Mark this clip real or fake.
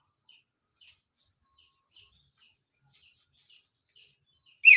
real